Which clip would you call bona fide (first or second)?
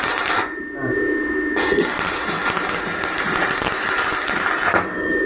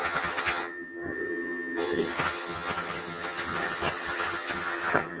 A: first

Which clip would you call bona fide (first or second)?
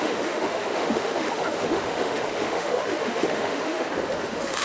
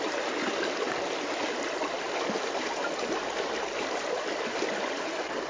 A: second